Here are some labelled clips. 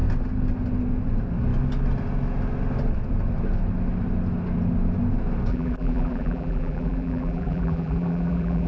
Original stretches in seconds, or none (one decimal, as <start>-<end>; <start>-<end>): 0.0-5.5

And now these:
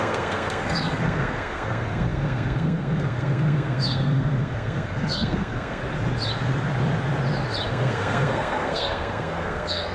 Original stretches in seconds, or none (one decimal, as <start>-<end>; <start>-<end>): 5.8-7.7

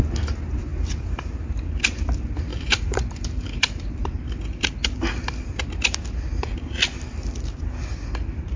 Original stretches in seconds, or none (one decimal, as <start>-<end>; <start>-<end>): 0.0-0.7; 1.3-2.5; 3.9-8.6

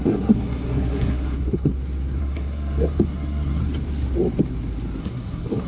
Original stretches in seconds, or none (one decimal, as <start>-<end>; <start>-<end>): 1.7-2.2; 3.6-5.0

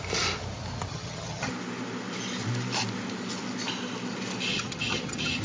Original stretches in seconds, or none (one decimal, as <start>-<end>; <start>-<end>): 0.0-0.9; 1.5-4.5

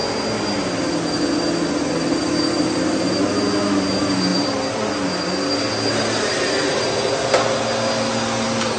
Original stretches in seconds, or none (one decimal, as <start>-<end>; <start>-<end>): 0.0-8.8

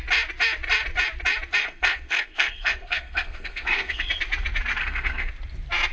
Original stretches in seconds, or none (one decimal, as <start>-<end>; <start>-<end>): 0.0-1.6; 4.1-4.8; 5.3-5.9

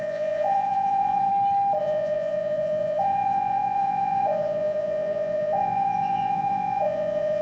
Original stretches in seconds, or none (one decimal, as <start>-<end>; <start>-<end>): 1.3-1.8